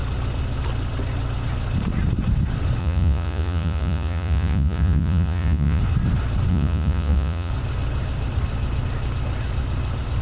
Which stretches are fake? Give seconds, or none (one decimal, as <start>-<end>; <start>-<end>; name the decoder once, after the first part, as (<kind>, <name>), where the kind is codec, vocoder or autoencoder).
2.8-5.8 (vocoder, Vocos); 6.5-7.5